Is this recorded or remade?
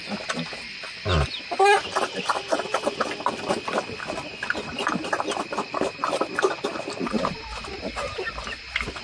recorded